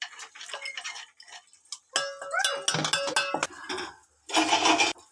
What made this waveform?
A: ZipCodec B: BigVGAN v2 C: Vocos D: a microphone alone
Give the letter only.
D